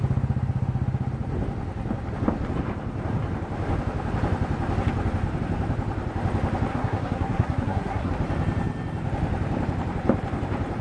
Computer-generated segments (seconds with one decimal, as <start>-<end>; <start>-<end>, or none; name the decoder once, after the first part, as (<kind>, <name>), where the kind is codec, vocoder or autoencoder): 6.7-8.1 (codec, SNAC)